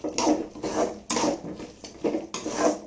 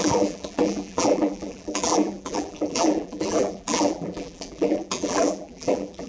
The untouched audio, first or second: first